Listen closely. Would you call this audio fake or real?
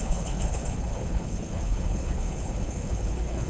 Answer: fake